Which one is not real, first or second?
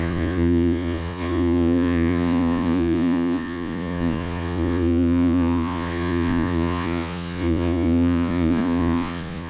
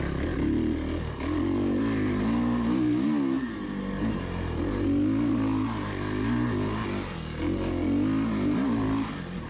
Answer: first